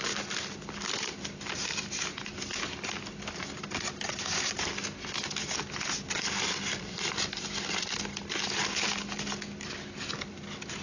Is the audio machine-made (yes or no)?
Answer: no